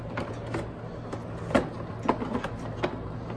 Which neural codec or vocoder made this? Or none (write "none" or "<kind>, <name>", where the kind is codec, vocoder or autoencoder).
none